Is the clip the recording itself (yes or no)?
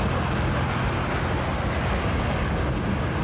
yes